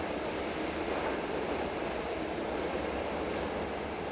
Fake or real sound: real